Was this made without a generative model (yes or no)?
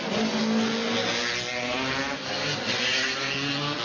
yes